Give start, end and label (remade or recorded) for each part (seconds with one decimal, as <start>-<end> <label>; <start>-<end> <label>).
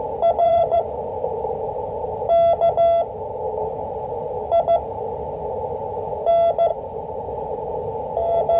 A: 0.0-0.4 recorded; 0.4-1.1 remade; 1.1-6.7 recorded; 6.7-7.3 remade; 7.3-8.6 recorded